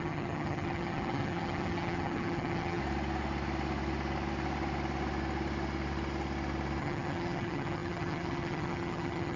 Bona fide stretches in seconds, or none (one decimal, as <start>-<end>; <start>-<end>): 2.8-6.8